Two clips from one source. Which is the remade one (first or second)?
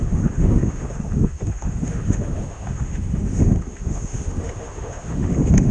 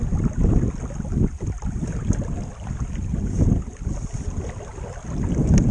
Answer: first